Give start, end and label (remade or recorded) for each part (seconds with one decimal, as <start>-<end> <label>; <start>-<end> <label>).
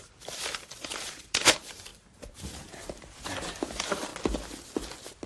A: 0.0-1.9 remade; 1.9-3.2 recorded; 3.2-4.1 remade; 4.1-5.3 recorded